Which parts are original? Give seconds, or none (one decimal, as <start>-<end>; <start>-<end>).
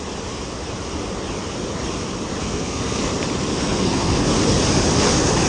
0.0-2.4; 3.0-3.5; 4.2-5.5